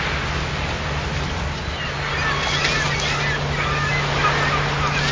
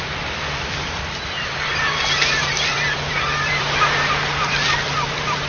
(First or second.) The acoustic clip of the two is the first